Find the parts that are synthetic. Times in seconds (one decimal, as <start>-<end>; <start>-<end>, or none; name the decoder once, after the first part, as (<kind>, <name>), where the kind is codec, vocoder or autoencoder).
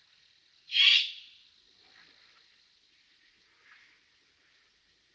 none